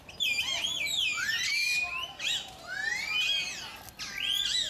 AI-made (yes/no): no